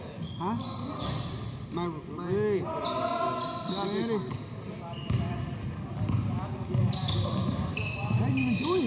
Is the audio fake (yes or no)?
no